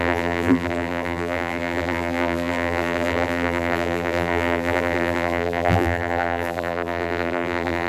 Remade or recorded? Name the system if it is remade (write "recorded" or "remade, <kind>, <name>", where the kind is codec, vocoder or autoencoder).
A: remade, vocoder, BigVGAN v2